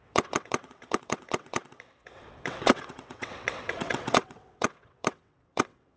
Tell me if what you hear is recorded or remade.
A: remade